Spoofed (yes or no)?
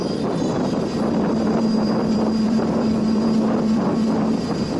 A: yes